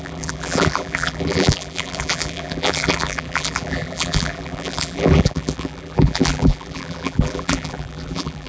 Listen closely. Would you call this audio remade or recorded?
remade